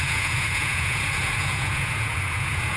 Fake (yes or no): yes